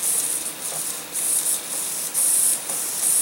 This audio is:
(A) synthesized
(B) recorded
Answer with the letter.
B